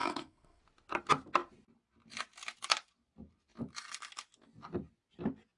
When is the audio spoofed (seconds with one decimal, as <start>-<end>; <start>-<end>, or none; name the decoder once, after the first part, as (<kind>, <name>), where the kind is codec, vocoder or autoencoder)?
0.0-0.6 (codec, SNAC)